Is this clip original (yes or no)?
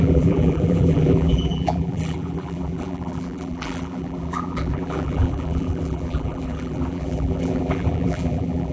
no